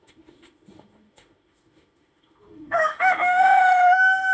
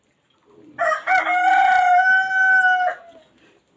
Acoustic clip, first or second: second